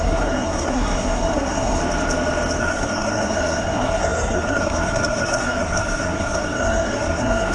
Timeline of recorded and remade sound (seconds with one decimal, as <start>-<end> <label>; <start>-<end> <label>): 0.0-1.8 remade; 1.8-2.6 recorded; 2.6-7.5 remade